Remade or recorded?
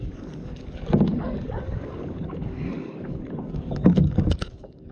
remade